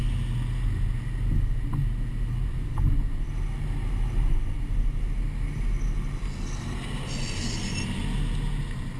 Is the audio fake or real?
real